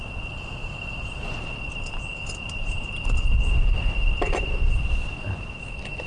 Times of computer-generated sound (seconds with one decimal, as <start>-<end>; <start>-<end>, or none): 0.6-1.5; 2.1-6.1